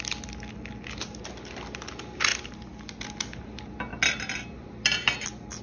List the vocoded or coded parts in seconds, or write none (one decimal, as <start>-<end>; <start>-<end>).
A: none